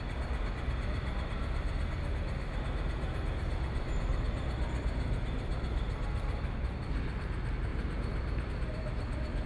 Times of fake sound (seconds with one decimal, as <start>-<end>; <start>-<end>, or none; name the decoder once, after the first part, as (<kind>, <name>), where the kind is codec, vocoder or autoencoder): 7.7-8.5 (vocoder, BigVGAN v2)